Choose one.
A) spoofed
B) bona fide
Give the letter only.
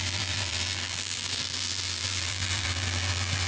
A